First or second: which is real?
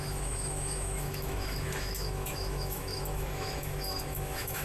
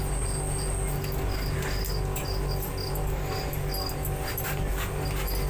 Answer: second